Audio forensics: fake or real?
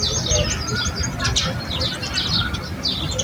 real